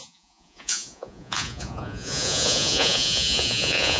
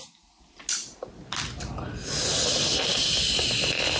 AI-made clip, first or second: first